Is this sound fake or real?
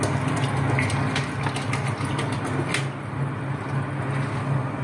real